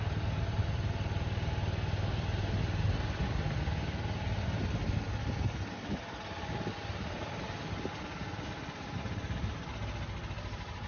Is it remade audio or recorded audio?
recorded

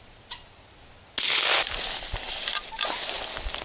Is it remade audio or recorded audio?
recorded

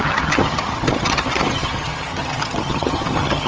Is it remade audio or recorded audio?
remade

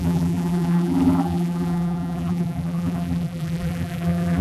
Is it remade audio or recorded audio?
remade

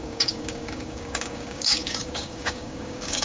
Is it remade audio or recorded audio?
remade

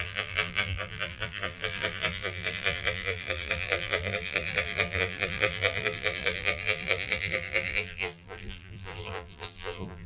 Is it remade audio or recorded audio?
remade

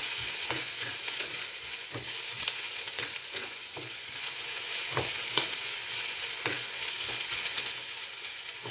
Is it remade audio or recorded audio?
remade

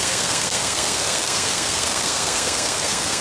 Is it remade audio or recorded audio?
remade